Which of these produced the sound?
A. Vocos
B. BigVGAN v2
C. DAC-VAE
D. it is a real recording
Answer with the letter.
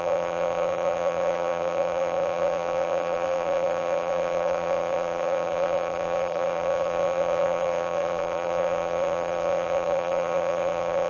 B